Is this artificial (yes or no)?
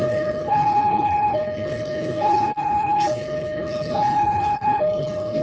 yes